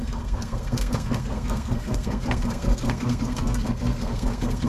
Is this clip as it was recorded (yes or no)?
no